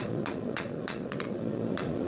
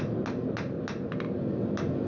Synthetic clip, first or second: first